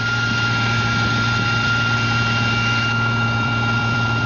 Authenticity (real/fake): fake